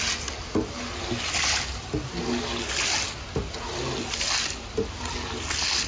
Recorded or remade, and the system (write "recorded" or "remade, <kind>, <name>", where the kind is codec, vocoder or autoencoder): recorded